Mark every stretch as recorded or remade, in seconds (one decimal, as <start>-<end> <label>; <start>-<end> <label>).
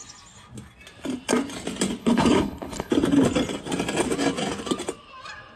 0.0-2.0 recorded; 2.0-2.9 remade; 2.9-5.6 recorded